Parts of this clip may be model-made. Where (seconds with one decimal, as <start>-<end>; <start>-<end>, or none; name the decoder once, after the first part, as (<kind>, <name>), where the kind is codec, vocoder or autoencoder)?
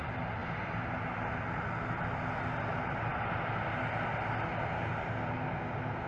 none